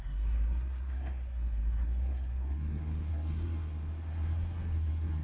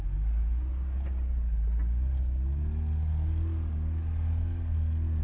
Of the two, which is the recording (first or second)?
second